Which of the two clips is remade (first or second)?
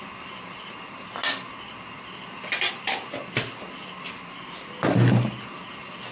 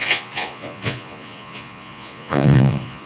second